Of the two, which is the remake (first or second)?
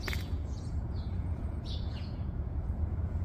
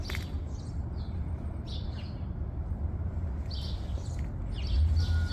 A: first